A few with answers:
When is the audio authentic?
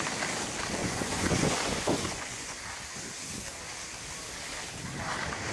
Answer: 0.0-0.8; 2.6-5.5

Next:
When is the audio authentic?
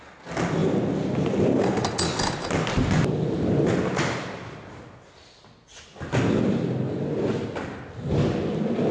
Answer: 0.0-8.9